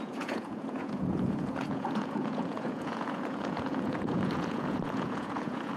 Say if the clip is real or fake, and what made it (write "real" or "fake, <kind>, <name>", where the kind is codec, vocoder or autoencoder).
fake, vocoder, Vocos